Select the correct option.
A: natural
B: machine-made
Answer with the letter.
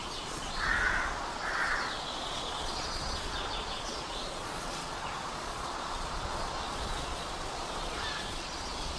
B